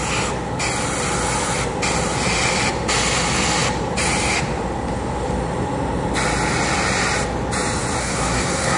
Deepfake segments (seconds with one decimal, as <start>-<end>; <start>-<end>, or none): 8.0-8.8